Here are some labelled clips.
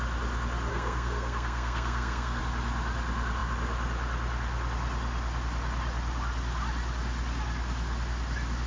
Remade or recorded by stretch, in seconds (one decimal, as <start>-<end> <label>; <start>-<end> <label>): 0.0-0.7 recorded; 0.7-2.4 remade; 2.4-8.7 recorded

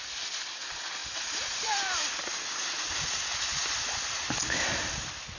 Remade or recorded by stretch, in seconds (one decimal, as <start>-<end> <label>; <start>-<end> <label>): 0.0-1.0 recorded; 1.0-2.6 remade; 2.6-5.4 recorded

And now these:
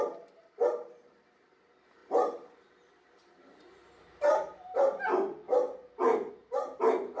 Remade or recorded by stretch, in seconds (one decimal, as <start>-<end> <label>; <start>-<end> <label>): 0.0-7.2 recorded